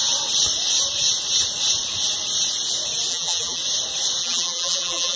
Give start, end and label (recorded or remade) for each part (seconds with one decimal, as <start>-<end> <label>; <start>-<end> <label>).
0.0-3.1 recorded; 3.1-3.6 remade; 3.6-4.2 recorded; 4.2-5.2 remade

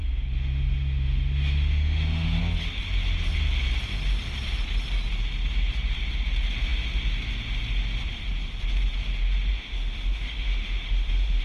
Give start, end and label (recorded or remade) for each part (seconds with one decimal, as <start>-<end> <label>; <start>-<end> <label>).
0.0-2.4 remade; 2.4-9.5 recorded; 9.5-11.4 remade

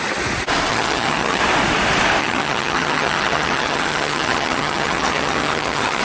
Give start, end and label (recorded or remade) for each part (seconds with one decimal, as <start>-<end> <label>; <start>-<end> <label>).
0.0-0.7 recorded; 0.7-1.4 remade; 1.4-2.2 recorded; 2.2-6.0 remade

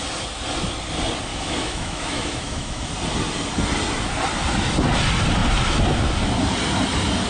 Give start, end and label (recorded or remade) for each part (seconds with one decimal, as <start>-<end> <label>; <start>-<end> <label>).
0.0-1.3 recorded; 1.3-2.9 remade; 2.9-7.3 recorded